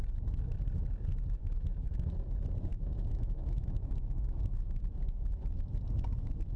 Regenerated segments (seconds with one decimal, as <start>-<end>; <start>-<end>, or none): 1.4-2.1; 2.7-4.8